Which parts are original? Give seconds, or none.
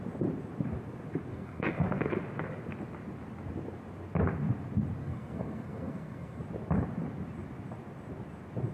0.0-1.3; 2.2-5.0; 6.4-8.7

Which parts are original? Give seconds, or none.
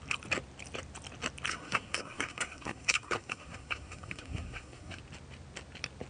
0.0-1.5; 5.0-6.1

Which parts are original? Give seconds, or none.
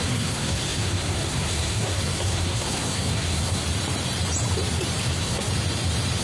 3.6-5.0; 5.5-6.2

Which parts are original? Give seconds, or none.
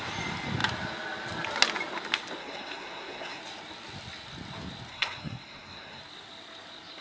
0.0-2.4; 3.4-4.9; 6.0-7.0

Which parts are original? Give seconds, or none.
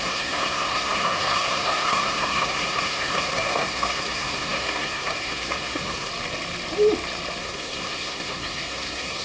6.1-7.4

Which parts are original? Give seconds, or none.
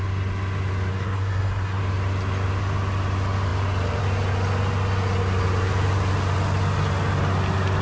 0.0-0.9; 1.8-7.8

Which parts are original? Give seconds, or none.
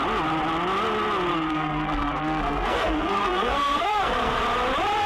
0.0-1.3; 4.4-5.1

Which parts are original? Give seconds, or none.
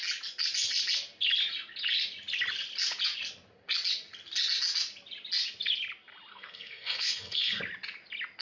0.0-6.3; 7.6-8.4